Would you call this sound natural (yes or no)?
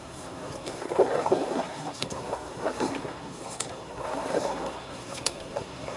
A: no